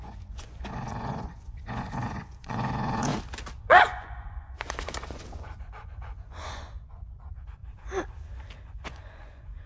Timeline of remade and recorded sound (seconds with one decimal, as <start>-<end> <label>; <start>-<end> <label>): 0.0-3.1 remade; 3.1-3.6 recorded; 3.6-7.6 remade; 7.6-8.7 recorded; 8.7-9.7 remade